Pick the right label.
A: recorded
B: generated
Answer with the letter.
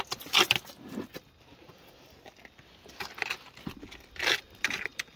A